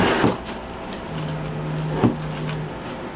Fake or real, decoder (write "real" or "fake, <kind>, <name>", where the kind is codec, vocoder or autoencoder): real